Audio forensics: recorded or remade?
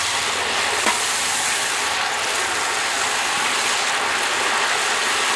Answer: recorded